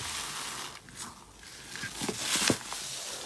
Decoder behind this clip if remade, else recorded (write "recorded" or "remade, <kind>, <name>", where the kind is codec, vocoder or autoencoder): recorded